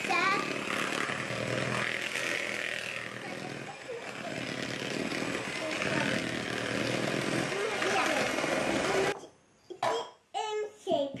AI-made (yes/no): no